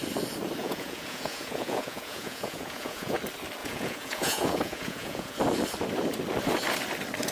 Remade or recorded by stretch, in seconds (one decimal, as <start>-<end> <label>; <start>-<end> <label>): 0.0-0.6 recorded; 0.6-3.2 remade; 3.2-3.6 recorded; 3.6-5.4 remade; 5.4-7.3 recorded